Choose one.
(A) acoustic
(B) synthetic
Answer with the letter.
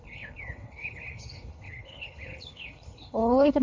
B